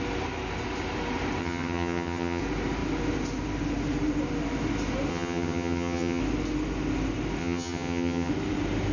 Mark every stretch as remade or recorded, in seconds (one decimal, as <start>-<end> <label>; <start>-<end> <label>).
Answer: 0.0-1.4 recorded; 1.4-2.4 remade; 2.4-5.1 recorded; 5.1-6.2 remade; 6.2-7.4 recorded; 7.4-8.3 remade; 8.3-8.9 recorded